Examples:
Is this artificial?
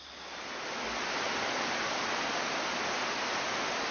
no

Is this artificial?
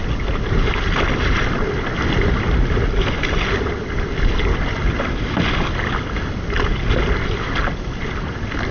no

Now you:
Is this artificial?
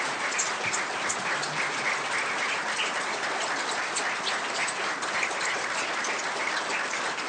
no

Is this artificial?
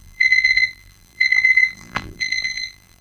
yes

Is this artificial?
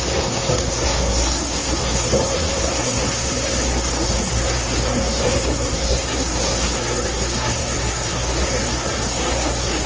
yes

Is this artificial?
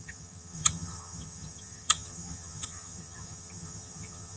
yes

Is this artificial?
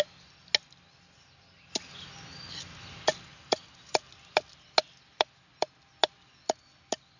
no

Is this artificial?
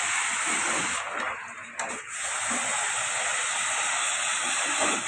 no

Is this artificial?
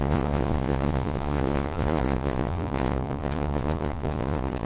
yes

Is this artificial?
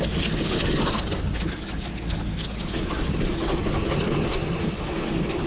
no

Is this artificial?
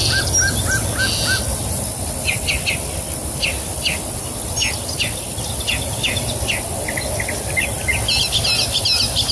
no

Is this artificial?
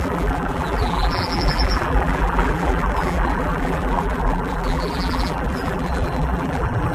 yes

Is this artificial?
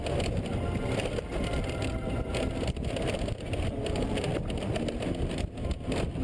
no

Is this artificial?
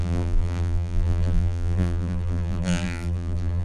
yes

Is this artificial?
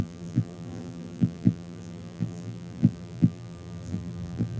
yes